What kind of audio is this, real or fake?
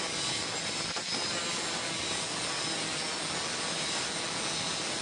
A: real